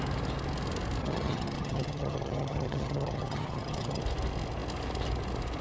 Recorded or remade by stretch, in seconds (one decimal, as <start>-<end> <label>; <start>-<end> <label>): 0.0-1.0 recorded; 1.0-4.0 remade; 4.0-5.6 recorded